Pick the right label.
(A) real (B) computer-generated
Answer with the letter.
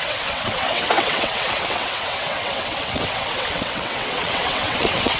B